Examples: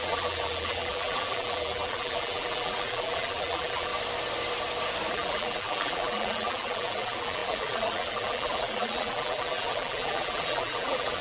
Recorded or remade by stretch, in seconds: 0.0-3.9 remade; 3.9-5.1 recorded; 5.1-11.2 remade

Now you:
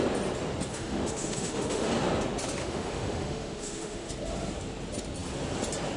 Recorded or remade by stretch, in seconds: 0.0-0.7 recorded; 0.7-1.9 remade; 1.9-2.6 recorded; 2.6-4.1 remade; 4.1-6.0 recorded

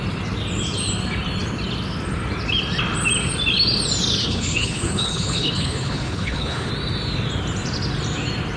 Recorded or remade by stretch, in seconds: 0.0-4.2 recorded; 4.2-6.7 remade; 6.7-8.6 recorded